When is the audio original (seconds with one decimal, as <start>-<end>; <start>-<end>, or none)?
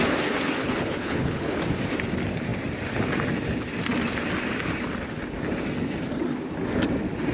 0.0-0.6; 1.6-7.3